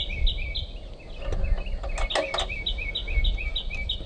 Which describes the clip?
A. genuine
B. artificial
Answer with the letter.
A